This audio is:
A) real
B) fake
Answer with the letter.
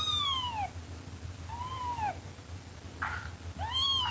A